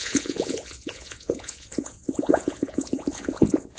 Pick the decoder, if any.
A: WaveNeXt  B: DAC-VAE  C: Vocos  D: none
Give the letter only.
C